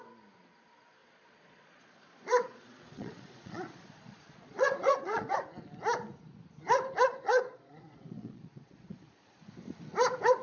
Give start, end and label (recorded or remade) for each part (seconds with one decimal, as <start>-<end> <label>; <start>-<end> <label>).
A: 0.0-1.0 recorded; 1.0-5.3 remade; 5.3-7.1 recorded; 7.1-9.4 remade; 9.4-10.4 recorded